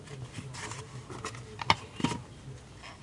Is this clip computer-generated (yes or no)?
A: yes